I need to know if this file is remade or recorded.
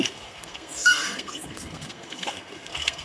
remade